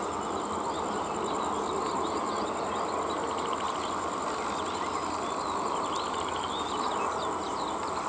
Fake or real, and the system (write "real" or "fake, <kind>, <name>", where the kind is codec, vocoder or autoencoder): real